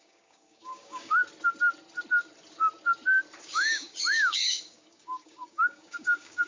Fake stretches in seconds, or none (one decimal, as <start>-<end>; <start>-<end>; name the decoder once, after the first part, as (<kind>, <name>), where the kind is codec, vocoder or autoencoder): 0.0-1.2 (codec, DAC); 3.4-6.5